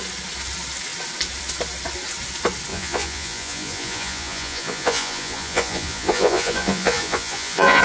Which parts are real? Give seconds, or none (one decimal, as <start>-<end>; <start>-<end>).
0.0-2.7